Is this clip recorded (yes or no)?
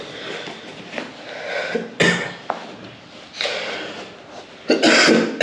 yes